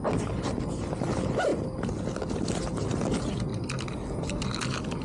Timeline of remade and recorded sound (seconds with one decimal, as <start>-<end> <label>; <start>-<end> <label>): 0.0-5.0 recorded

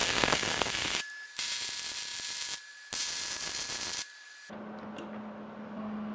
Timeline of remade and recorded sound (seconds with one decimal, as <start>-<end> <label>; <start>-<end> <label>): 0.0-1.0 remade; 1.0-6.1 recorded

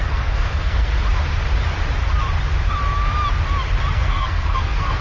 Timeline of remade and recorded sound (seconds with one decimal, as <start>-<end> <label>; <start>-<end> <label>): 0.0-0.9 remade; 0.9-3.9 recorded; 3.9-5.0 remade